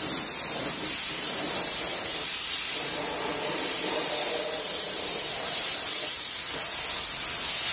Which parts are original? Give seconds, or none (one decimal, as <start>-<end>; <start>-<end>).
0.0-1.9; 5.9-7.7